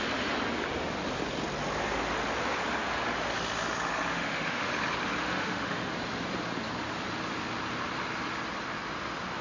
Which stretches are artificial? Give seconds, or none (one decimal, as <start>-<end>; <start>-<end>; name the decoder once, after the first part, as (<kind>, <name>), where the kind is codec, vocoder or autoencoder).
4.1-4.7 (autoencoder, DAC-VAE); 5.2-5.9